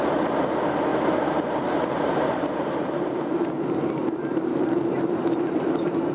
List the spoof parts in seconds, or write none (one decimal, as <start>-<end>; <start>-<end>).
0.9-3.4; 4.0-6.1